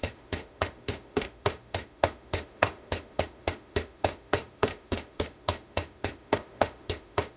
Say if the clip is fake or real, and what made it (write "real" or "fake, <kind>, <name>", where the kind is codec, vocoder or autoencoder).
fake, autoencoder, DAC-VAE